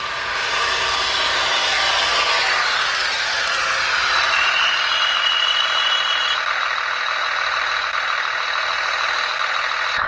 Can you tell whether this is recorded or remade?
remade